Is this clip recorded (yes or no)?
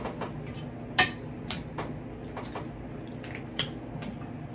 yes